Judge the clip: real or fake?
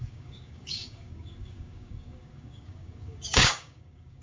fake